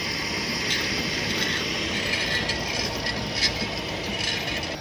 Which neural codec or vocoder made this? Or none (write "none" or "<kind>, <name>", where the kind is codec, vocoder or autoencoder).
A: none